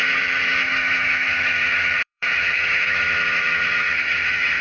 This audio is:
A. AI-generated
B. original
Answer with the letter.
A